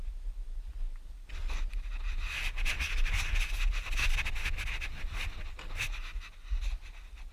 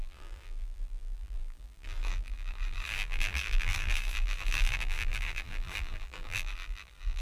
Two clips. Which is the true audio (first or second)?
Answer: first